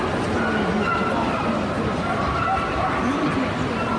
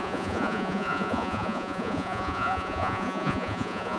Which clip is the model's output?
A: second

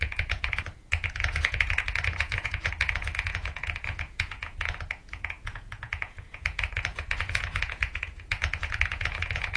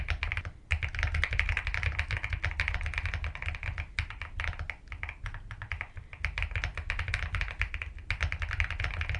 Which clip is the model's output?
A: first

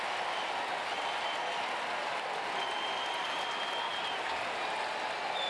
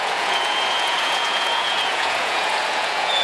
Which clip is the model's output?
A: second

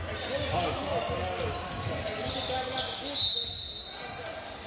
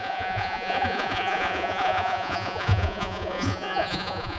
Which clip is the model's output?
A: second